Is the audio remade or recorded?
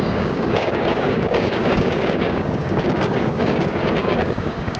remade